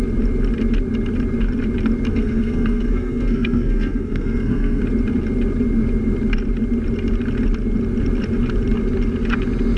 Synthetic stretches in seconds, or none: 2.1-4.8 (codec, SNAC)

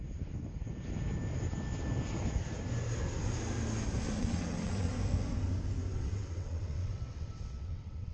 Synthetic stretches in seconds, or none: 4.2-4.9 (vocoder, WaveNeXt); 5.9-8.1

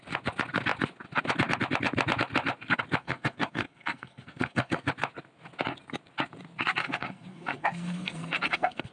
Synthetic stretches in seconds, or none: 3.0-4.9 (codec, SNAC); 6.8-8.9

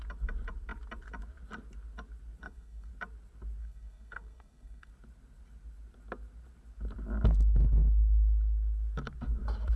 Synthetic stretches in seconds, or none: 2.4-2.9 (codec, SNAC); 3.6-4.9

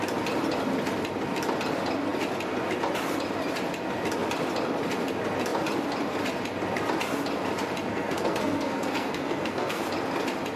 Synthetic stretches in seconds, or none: 7.9-9.8 (codec, SNAC)